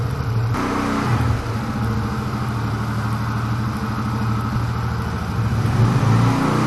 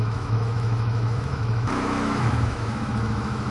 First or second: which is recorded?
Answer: first